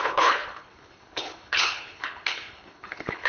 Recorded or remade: remade